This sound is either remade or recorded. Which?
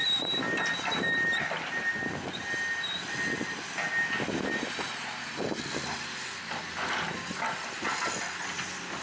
recorded